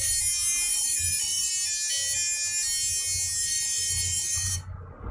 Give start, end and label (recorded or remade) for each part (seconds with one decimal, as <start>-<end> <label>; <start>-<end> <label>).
0.0-0.7 recorded; 0.7-1.5 remade; 1.5-3.4 recorded; 3.4-4.5 remade; 4.5-5.1 recorded